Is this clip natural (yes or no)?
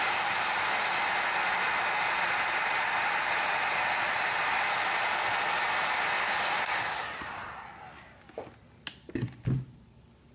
yes